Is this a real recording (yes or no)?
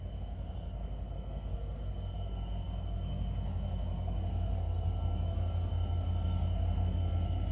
no